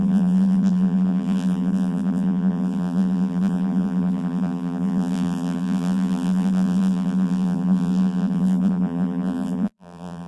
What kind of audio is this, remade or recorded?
remade